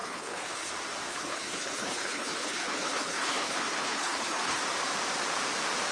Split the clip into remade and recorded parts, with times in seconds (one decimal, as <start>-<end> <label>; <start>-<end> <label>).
0.0-0.7 remade; 0.7-1.1 recorded; 1.1-4.6 remade; 4.6-5.9 recorded